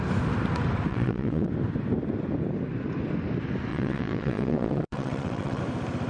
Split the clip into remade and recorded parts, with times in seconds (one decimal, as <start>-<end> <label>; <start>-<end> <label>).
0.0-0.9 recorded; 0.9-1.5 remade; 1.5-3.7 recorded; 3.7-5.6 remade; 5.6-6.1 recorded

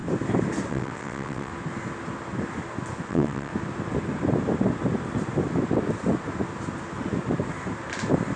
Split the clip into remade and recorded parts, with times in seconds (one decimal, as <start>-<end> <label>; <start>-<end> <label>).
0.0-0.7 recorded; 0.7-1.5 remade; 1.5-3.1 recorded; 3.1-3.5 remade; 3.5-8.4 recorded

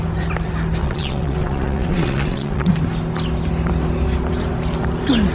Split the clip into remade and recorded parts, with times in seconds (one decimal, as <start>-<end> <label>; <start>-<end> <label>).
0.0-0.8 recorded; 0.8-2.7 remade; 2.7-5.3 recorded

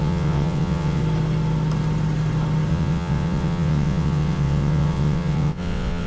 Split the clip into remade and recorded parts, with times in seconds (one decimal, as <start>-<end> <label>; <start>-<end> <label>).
0.0-1.0 remade; 1.0-2.7 recorded; 2.7-6.1 remade

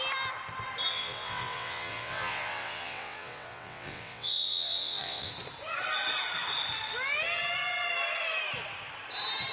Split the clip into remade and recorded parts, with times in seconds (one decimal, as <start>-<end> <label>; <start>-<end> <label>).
0.0-0.9 recorded; 0.9-5.3 remade; 5.3-9.5 recorded

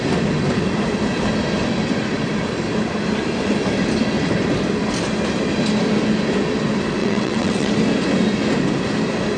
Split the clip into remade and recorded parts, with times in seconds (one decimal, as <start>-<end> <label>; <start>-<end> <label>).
0.0-7.0 recorded; 7.0-7.7 remade; 7.7-9.4 recorded

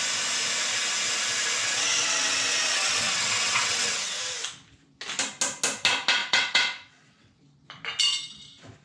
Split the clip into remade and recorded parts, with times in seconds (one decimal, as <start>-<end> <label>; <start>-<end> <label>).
0.0-1.6 recorded; 1.6-4.2 remade; 4.2-6.2 recorded; 6.2-7.4 remade; 7.4-8.8 recorded